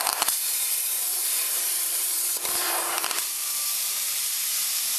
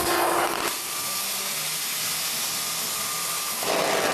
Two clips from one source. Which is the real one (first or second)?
second